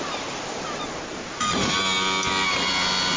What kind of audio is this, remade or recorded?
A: recorded